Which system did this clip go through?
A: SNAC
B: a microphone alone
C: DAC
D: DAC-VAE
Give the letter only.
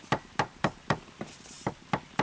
B